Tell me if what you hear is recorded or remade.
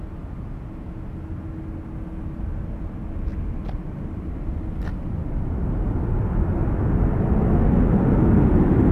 recorded